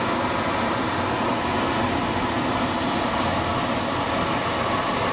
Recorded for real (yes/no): yes